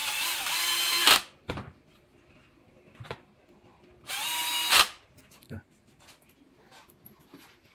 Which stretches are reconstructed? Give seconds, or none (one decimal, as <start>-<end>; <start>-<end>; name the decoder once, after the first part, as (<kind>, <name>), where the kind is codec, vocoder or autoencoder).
0.0-4.1 (vocoder, BigVGAN v2)